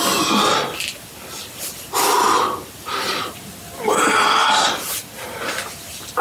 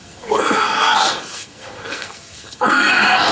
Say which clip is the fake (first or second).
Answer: second